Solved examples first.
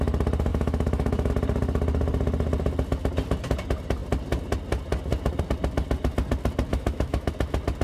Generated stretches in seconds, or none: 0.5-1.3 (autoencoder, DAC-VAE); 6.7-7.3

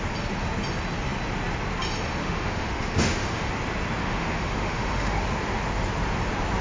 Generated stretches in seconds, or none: 2.2-3.5 (autoencoder, DAC-VAE); 4.0-5.2

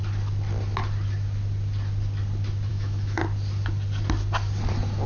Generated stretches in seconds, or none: 2.7-3.2 (autoencoder, DAC-VAE)